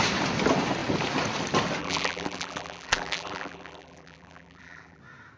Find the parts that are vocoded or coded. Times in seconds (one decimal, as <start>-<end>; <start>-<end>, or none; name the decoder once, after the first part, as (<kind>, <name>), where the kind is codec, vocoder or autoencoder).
1.8-5.0 (vocoder, BigVGAN v2)